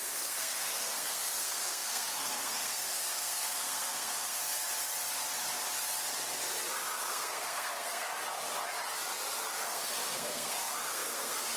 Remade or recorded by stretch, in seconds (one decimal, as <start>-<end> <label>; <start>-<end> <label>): 0.0-4.4 remade; 4.4-7.0 recorded; 7.0-8.1 remade; 8.1-9.6 recorded; 9.6-11.6 remade